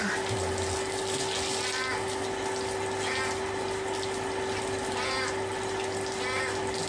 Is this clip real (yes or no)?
yes